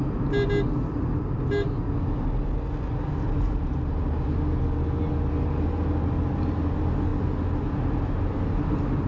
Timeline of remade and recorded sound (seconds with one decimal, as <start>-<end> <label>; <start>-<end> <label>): 0.0-9.1 recorded